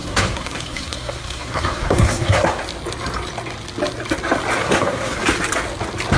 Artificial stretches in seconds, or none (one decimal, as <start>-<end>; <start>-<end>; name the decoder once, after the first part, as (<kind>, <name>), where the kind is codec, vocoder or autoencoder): 0.0-2.6 (codec, SNAC); 4.6-5.2